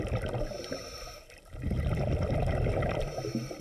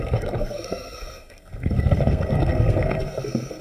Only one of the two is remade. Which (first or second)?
second